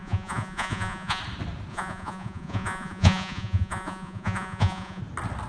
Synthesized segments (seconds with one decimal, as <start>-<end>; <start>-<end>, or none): 0.0-1.2; 1.7-5.0